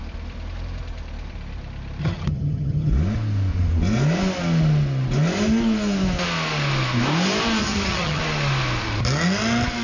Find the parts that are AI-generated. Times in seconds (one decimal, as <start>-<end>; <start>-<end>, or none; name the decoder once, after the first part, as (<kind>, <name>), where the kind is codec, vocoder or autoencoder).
2.0-2.9 (vocoder, HiFi-GAN); 7.6-8.2

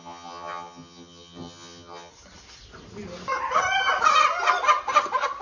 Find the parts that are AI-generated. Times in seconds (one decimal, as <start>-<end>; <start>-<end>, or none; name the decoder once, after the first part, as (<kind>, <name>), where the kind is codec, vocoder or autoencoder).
0.0-2.1 (vocoder, HiFi-GAN)

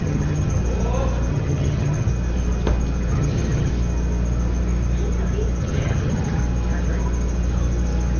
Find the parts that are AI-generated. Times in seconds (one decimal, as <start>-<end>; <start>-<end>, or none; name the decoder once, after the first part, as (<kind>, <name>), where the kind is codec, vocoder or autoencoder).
0.0-0.6 (vocoder, HiFi-GAN); 1.3-2.1; 3.1-3.7; 5.6-6.4

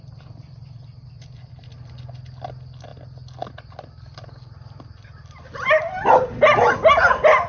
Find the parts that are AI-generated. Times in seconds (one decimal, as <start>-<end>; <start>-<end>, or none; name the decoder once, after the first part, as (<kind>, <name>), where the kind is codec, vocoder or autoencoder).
none

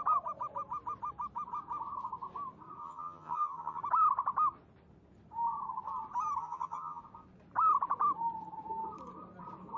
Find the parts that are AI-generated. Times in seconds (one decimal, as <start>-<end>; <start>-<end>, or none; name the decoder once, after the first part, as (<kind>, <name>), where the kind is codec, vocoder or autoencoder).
2.8-3.8 (vocoder, HiFi-GAN); 6.4-7.0

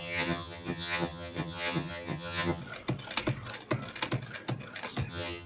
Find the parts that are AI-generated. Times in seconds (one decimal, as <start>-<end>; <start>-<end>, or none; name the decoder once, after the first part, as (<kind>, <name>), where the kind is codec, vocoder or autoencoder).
0.0-2.6 (vocoder, HiFi-GAN); 5.1-5.5